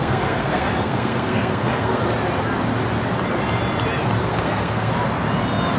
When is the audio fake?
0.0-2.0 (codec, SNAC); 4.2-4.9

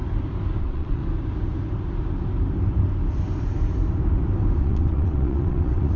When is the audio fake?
0.6-1.0 (vocoder, WaveNeXt); 4.6-6.0

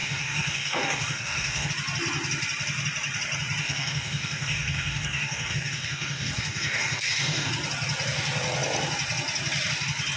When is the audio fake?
0.0-1.7 (codec, DAC); 3.6-7.5

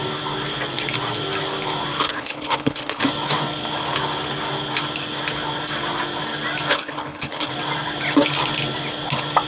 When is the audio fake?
2.0-3.0 (codec, HILCodec); 6.7-7.5